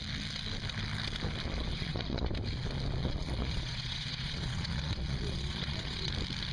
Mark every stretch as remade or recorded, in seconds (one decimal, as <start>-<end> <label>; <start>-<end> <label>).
0.0-1.7 recorded; 1.7-2.3 remade; 2.3-3.0 recorded; 3.0-6.1 remade; 6.1-6.5 recorded